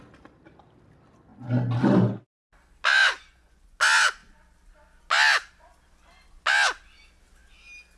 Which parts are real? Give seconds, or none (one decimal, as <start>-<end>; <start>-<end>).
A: 0.0-3.0; 3.8-8.0